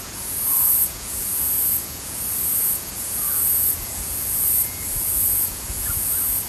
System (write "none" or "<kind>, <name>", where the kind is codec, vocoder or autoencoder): vocoder, Vocos